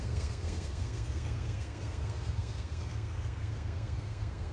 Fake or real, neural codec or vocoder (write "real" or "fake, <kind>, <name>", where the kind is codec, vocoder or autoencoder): fake, codec, SNAC